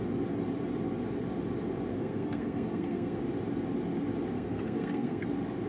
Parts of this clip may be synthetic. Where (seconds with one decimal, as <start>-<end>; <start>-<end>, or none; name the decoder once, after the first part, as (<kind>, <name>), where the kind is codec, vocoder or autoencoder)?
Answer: 1.9-3.2 (codec, SNAC); 4.3-5.3